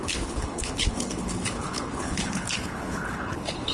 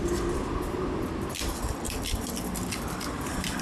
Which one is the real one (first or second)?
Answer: second